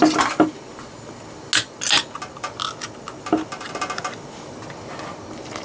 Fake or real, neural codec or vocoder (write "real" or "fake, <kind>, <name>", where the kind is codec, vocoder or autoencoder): real